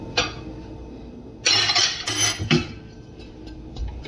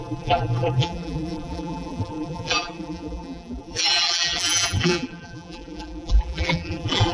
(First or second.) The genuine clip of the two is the first